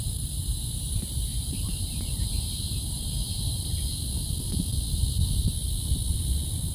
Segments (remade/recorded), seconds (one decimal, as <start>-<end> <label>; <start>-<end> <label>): 0.0-3.7 remade; 3.7-6.7 recorded